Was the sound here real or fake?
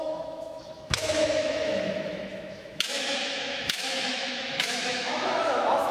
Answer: fake